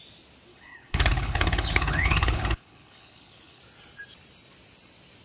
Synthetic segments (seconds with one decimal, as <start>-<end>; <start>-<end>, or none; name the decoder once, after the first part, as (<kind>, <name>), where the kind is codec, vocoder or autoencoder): 0.5-3.6 (codec, HILCodec)